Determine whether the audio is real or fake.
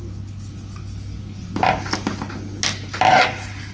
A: real